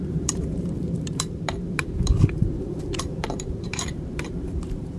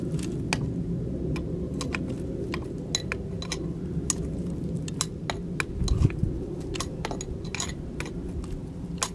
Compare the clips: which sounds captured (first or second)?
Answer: second